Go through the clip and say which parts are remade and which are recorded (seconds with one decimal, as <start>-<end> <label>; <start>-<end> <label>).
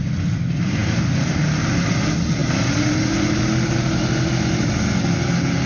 0.0-5.7 recorded